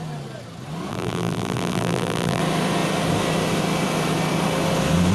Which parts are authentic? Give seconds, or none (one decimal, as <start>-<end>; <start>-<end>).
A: 0.0-0.9; 2.4-5.1